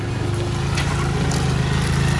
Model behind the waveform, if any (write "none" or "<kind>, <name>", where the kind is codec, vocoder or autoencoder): none